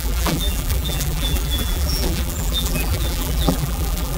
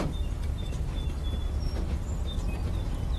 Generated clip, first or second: first